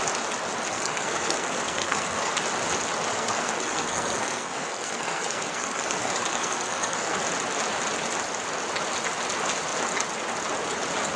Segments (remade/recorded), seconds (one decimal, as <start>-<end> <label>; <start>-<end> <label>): 0.0-0.7 recorded; 0.7-2.4 remade; 2.4-3.1 recorded; 3.1-7.2 remade; 7.2-11.2 recorded